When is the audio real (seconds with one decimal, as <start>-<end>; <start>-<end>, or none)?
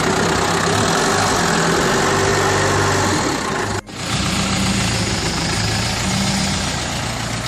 0.0-7.5